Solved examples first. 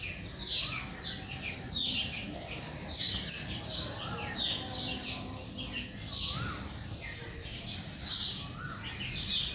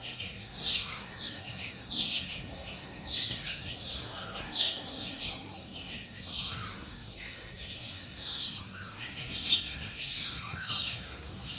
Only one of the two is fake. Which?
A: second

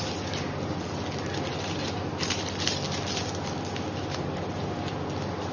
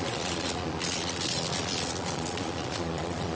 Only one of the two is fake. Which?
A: second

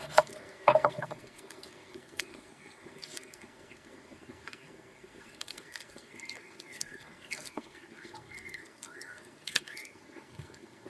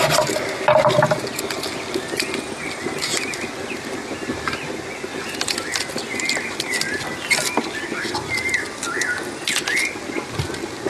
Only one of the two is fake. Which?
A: first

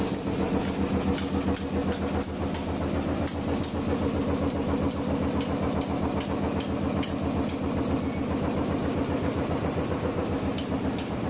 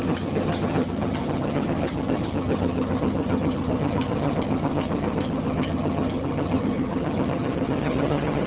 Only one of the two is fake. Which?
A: second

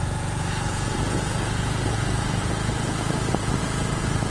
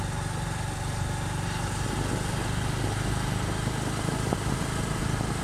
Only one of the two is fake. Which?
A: first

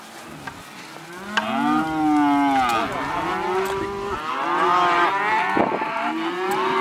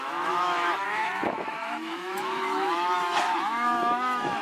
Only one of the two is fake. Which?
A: second